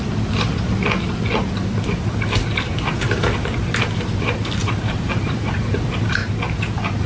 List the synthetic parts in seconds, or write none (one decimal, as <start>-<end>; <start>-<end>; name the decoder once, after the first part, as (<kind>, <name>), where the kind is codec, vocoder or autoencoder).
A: 4.6-5.8 (vocoder, BigVGAN v2)